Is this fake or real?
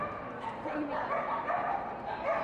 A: real